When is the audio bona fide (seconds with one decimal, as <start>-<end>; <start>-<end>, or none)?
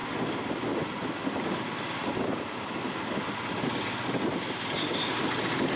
0.0-5.8